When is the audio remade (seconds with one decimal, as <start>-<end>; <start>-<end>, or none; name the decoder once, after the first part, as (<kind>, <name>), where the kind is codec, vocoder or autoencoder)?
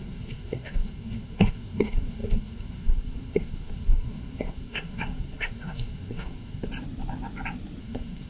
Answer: 0.0-6.7 (codec, SNAC); 7.8-8.3